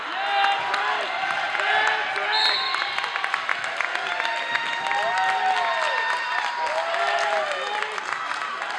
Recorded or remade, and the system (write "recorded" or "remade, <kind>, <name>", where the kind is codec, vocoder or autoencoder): recorded